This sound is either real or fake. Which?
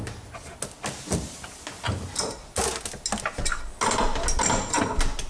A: real